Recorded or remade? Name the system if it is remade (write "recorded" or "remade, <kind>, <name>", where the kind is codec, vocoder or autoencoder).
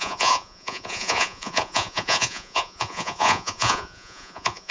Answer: remade, vocoder, Vocos